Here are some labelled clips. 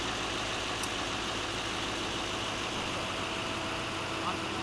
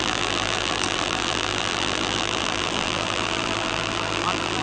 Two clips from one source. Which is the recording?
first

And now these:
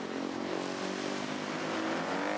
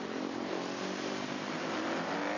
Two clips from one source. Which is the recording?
first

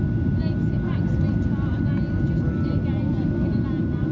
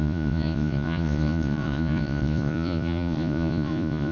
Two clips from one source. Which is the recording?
first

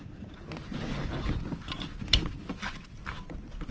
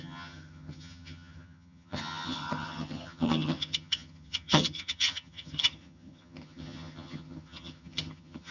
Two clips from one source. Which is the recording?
first